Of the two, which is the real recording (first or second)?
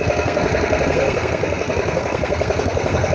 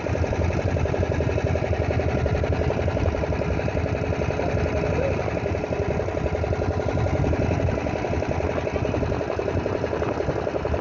second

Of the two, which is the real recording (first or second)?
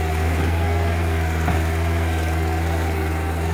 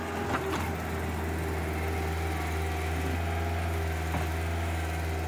second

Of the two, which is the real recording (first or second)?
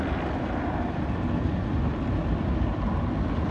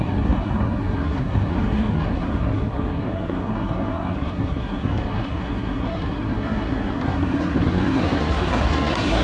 first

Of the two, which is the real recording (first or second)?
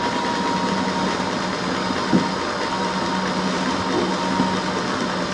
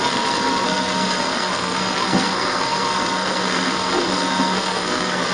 first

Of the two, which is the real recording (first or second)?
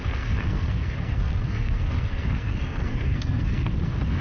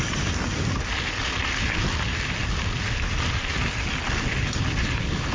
second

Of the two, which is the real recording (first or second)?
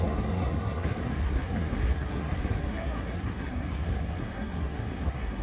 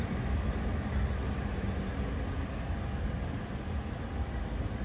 second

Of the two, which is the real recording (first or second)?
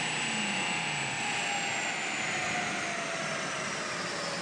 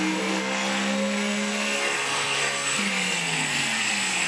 first